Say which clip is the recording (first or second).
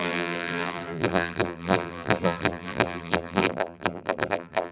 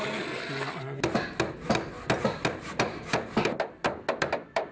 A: second